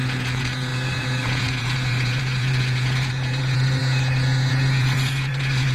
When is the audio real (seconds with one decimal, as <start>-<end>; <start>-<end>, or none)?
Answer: 3.8-4.5